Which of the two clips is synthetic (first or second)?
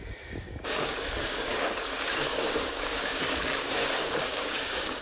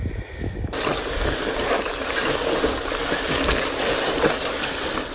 first